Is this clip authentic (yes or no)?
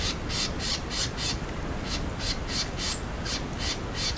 yes